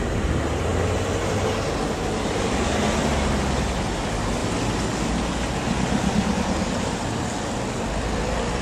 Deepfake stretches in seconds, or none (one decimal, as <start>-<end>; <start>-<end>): none